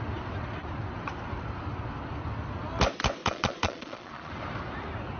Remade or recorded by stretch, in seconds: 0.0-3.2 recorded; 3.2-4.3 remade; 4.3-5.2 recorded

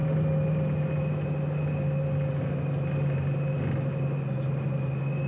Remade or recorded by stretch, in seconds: 0.0-5.3 recorded

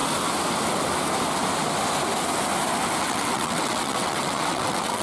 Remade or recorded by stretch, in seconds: 0.0-3.0 recorded; 3.0-5.0 remade

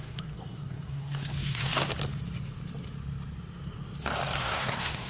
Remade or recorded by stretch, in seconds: 0.0-1.7 remade; 1.7-4.4 recorded; 4.4-5.1 remade

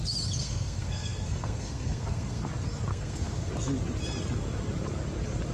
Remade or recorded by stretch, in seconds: 0.0-0.4 recorded; 0.4-2.4 remade; 2.4-2.9 recorded; 2.9-3.5 remade; 3.5-5.5 recorded

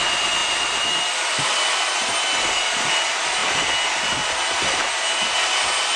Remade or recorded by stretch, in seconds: 0.0-6.0 recorded

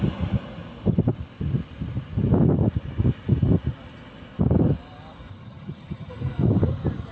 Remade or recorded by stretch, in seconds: 0.0-5.3 recorded; 5.3-6.1 remade; 6.1-7.1 recorded

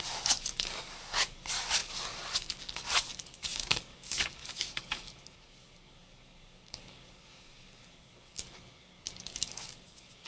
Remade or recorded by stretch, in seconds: 0.0-10.3 remade